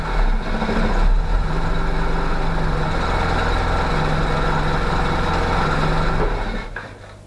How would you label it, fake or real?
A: real